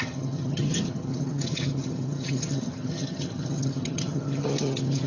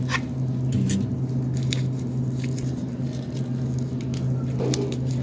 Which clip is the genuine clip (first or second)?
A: second